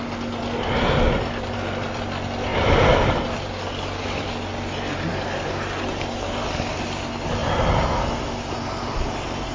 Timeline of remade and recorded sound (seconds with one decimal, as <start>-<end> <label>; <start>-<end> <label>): 0.0-9.5 recorded